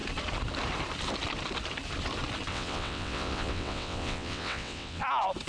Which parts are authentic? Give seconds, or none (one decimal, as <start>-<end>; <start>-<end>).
0.0-2.5; 5.0-5.5